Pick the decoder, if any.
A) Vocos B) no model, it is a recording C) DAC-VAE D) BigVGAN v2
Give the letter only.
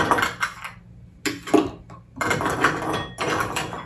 B